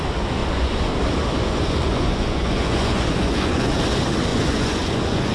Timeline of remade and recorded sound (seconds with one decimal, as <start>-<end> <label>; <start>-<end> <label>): 0.0-0.4 recorded; 0.4-0.9 remade; 0.9-1.4 recorded; 1.4-3.8 remade; 3.8-4.3 recorded; 4.3-5.3 remade